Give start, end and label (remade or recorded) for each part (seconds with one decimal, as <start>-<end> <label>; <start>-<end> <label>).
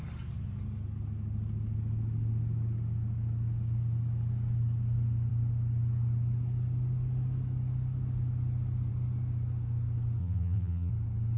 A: 0.0-10.2 recorded; 10.2-10.9 remade; 10.9-11.4 recorded